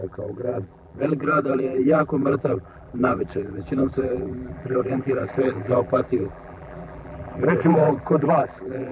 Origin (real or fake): fake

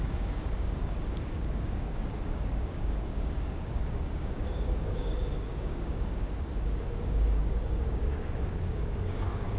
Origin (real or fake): fake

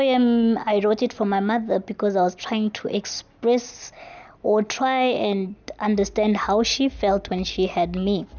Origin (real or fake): real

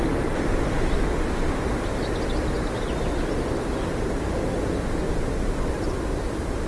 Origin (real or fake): real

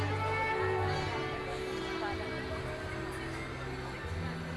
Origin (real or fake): real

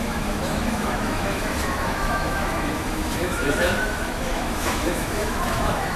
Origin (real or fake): fake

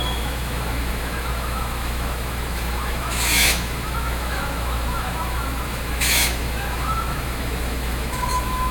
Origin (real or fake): fake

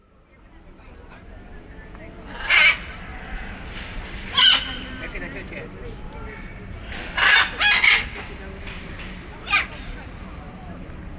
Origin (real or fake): real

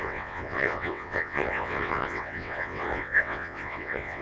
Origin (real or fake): fake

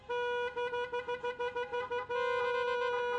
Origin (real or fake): real